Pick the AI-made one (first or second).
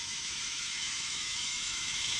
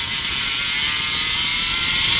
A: first